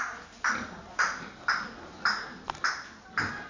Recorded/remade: recorded